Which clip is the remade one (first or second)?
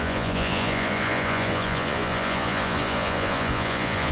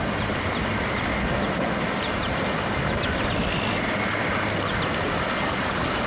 first